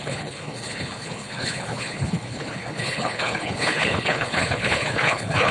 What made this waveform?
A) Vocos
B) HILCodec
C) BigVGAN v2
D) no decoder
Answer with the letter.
B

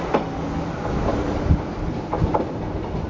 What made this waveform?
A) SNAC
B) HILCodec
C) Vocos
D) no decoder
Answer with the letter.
D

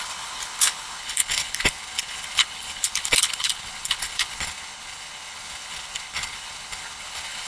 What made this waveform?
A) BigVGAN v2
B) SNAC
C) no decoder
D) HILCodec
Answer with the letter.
D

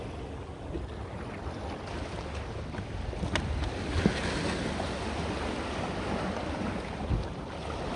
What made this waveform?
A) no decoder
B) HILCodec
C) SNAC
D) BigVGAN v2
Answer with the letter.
A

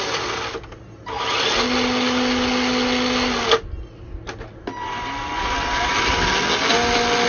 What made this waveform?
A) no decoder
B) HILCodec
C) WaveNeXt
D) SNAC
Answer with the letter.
A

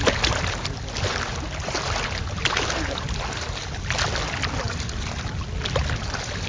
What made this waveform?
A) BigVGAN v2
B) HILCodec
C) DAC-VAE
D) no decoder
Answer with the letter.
D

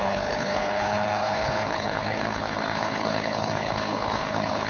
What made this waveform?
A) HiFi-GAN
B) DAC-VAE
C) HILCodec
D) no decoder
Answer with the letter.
C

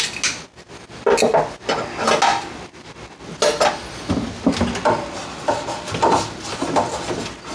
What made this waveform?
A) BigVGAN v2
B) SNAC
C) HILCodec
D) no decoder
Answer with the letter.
D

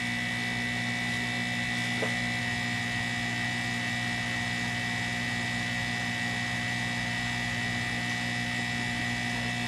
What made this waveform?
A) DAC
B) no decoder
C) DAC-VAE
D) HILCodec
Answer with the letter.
B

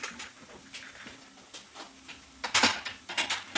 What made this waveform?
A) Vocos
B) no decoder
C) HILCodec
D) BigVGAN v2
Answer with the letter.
B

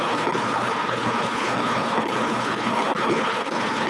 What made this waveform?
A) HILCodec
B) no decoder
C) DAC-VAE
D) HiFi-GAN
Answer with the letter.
A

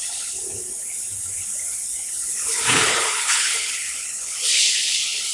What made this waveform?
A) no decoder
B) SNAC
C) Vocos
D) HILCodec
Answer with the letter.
D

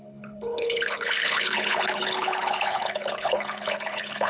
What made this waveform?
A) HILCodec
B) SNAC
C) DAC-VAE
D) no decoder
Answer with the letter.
A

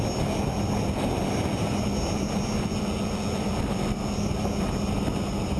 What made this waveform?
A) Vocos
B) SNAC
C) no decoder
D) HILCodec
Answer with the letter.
C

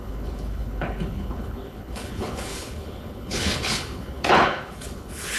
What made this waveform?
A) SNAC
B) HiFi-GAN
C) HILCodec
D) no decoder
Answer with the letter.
C